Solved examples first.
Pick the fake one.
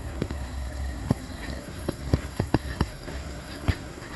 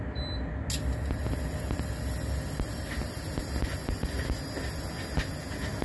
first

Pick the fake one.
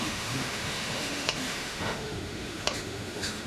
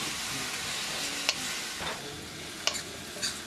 first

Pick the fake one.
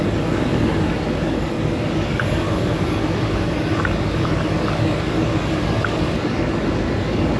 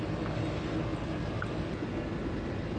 first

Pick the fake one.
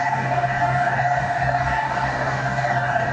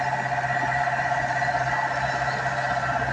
first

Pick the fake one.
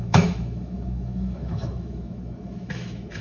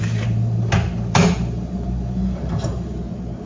first